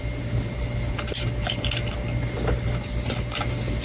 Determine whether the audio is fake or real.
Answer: real